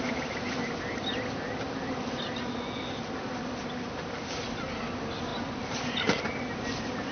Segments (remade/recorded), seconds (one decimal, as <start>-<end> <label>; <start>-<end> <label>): 0.0-7.1 recorded